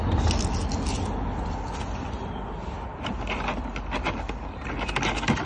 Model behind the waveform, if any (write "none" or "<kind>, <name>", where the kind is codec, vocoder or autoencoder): none